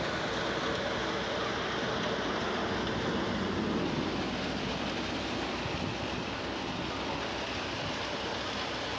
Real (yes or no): yes